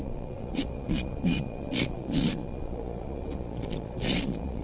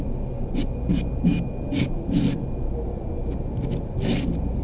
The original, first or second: second